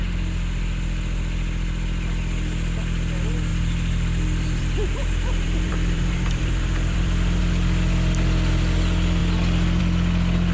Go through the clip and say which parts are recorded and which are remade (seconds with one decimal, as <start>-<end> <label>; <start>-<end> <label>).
0.0-3.5 recorded; 3.5-7.4 remade; 7.4-10.5 recorded